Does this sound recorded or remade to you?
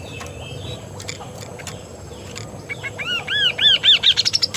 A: recorded